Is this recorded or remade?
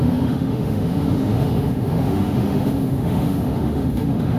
remade